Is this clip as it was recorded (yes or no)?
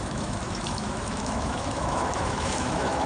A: no